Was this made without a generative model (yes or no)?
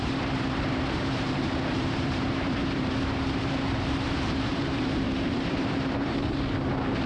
no